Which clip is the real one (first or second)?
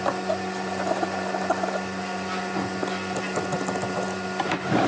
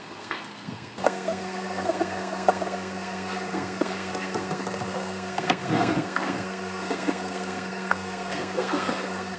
first